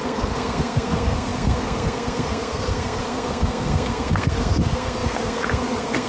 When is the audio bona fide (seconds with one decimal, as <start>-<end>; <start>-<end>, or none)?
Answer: none